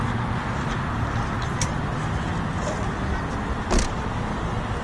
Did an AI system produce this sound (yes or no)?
no